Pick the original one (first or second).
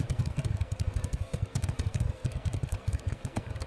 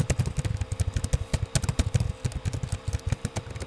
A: second